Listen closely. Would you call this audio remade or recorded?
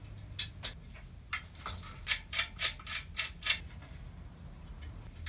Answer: recorded